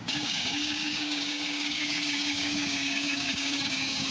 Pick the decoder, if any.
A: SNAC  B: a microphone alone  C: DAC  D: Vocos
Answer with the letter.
C